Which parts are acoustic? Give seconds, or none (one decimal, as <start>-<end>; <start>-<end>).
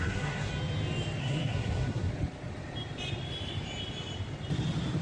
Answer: 0.5-1.2; 2.1-5.0